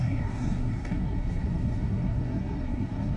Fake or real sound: fake